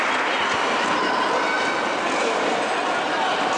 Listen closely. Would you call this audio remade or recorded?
recorded